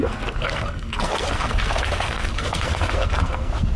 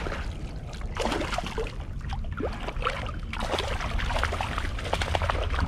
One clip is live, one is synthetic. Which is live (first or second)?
second